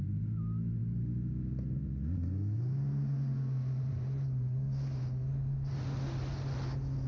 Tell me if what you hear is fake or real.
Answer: real